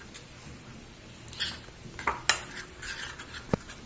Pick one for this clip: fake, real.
real